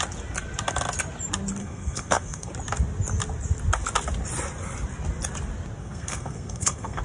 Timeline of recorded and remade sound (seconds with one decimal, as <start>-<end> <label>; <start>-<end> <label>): 0.0-1.6 recorded; 1.6-2.5 remade; 2.5-5.8 recorded; 5.8-7.0 remade